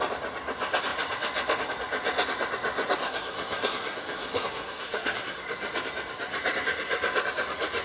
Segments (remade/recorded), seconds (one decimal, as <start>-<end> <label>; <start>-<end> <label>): 0.0-3.0 recorded; 3.0-5.4 remade; 5.4-7.8 recorded